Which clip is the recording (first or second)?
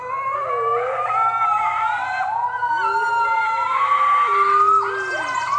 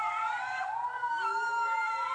first